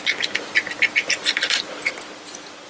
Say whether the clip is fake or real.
real